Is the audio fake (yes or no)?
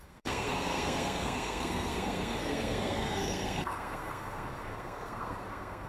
yes